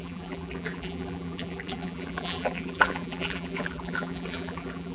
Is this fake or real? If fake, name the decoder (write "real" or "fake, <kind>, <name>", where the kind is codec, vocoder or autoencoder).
fake, vocoder, BigVGAN v2